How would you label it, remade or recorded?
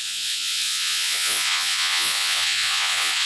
remade